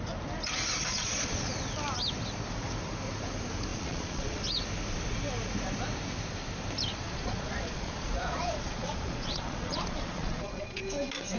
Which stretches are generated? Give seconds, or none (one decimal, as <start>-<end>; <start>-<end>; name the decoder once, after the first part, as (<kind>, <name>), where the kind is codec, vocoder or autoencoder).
0.9-1.5 (vocoder, Vocos); 3.7-4.4; 6.9-10.8